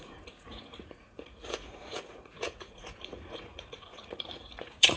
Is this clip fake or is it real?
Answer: fake